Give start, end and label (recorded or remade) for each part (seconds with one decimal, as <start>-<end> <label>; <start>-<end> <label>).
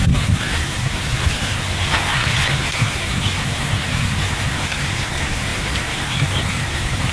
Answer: 0.0-7.1 remade